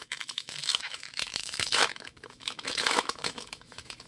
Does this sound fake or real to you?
fake